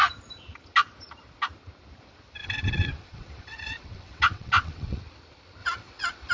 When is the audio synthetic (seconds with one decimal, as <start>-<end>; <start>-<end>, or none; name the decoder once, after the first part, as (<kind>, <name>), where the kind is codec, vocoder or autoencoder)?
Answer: 2.4-5.0 (vocoder, WaveNeXt); 5.6-6.3